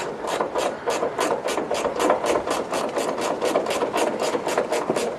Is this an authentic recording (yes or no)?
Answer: yes